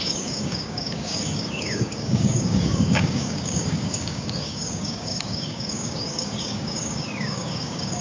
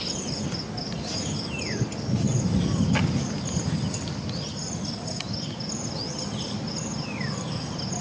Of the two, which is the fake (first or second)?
first